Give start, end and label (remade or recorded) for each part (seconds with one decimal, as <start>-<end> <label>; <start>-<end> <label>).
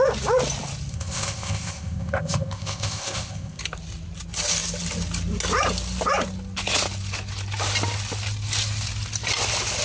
0.0-0.9 recorded; 0.9-3.6 remade; 3.6-9.8 recorded